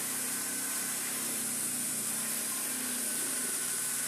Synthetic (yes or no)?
yes